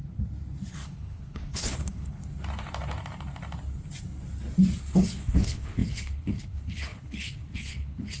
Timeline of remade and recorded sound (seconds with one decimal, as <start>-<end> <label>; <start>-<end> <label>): 0.0-0.7 recorded; 0.7-2.2 remade; 2.2-4.8 recorded; 4.8-8.2 remade